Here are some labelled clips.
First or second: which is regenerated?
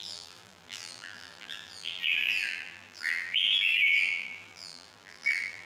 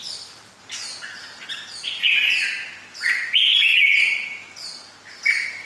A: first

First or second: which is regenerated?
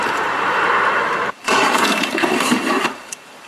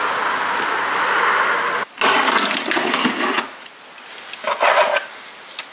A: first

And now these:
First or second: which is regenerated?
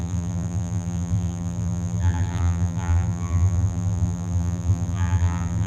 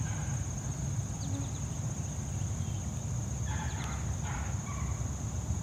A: first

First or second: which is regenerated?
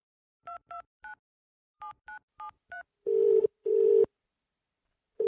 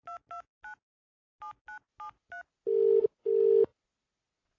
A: first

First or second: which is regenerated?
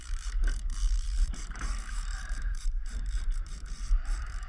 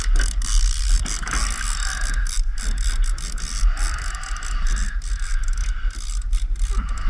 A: first